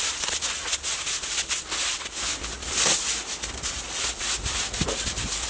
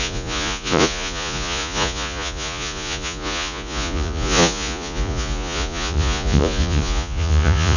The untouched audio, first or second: first